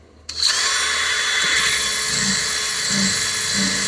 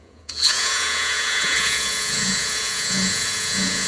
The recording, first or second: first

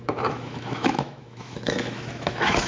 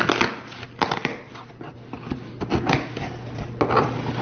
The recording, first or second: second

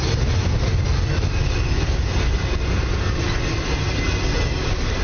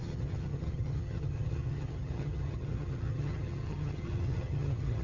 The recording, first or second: first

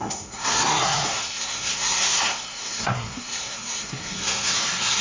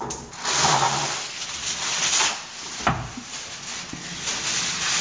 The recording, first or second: second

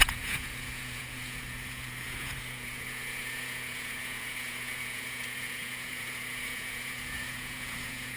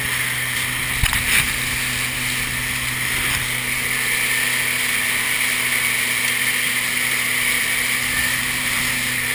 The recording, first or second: second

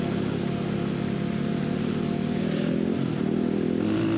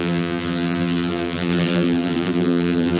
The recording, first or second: first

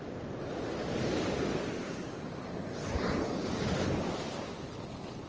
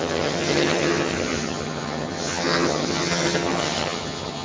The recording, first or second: first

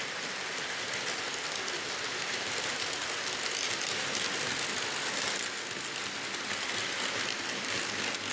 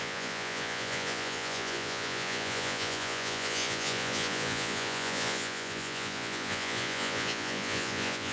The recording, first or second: first